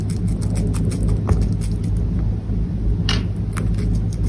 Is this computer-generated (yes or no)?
no